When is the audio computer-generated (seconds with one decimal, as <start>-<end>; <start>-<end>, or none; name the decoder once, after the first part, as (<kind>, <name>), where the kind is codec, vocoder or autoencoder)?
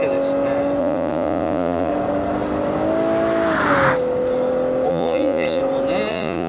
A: 0.8-1.9 (vocoder, Vocos); 4.9-5.6; 6.1-6.5